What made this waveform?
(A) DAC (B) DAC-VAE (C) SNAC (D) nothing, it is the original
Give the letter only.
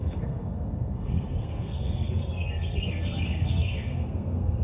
C